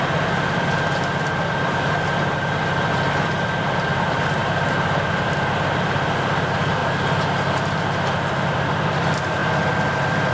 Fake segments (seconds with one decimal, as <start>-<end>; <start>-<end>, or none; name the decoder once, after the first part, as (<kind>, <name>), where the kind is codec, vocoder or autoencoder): 0.0-4.4 (vocoder, BigVGAN v2); 5.1-6.8; 7.5-9.4; 9.9-10.3